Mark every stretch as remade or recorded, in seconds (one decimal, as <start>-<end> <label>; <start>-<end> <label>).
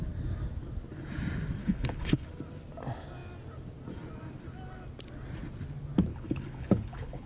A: 0.0-1.6 recorded; 1.6-2.3 remade; 2.3-6.1 recorded; 6.1-7.3 remade